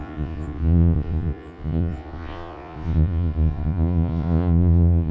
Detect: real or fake fake